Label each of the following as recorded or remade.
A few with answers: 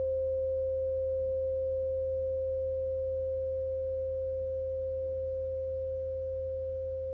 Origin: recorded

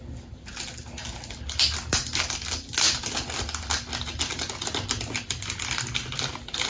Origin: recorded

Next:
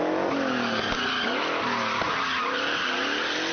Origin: recorded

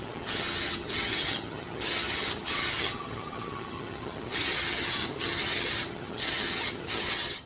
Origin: remade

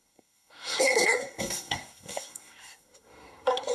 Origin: remade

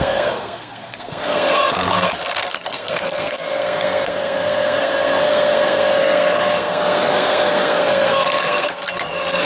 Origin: remade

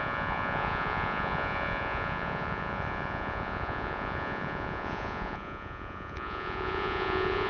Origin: remade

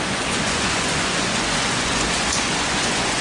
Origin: remade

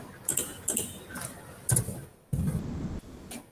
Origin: recorded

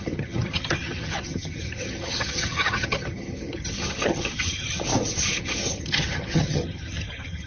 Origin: remade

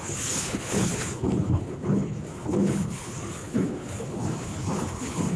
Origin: remade